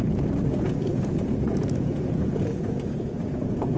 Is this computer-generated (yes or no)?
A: yes